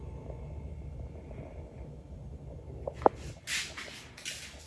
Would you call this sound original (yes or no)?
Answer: yes